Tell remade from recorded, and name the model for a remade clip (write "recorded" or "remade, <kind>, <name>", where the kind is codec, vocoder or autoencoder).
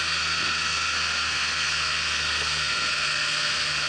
remade, codec, SNAC